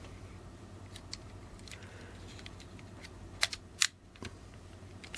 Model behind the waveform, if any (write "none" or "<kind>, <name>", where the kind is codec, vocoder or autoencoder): vocoder, BigVGAN v2